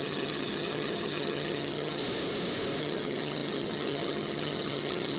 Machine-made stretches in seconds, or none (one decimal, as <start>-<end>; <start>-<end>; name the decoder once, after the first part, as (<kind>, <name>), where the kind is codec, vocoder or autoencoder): 0.0-2.0 (vocoder, HiFi-GAN); 2.8-5.2